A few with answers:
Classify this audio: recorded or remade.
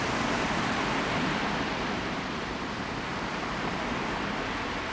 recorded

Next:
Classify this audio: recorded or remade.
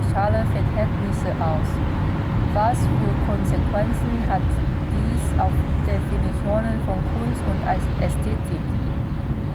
recorded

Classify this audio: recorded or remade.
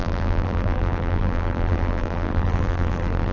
remade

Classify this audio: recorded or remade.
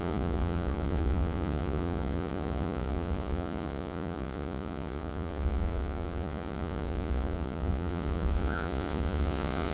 remade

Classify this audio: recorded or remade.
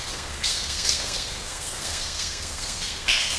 remade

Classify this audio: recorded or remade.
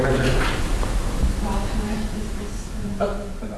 recorded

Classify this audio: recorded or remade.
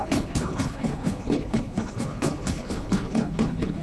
remade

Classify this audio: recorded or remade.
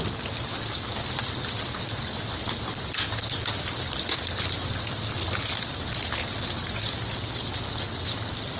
recorded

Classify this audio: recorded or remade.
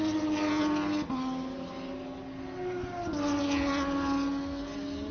recorded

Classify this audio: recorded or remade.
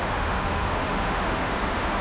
remade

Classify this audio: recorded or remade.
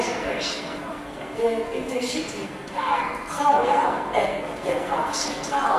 remade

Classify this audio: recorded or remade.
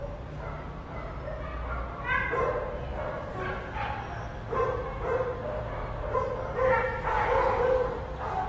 recorded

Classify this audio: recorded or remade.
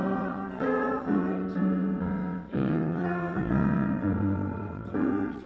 remade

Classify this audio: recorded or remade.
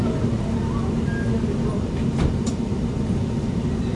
recorded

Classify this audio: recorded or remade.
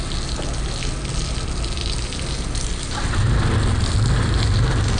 recorded